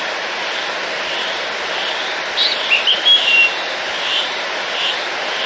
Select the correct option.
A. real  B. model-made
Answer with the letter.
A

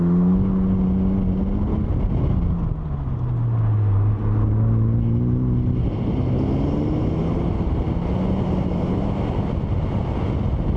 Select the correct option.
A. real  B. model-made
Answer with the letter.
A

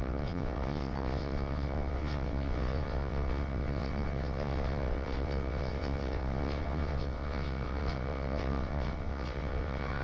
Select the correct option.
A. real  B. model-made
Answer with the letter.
B